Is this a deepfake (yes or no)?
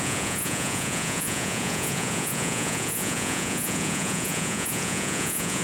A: yes